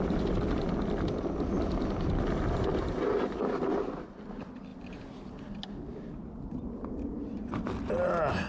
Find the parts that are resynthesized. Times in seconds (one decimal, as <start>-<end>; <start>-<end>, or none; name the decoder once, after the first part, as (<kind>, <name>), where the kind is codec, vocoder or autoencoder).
none